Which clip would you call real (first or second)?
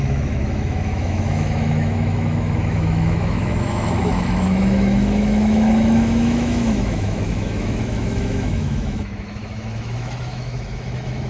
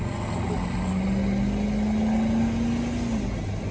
second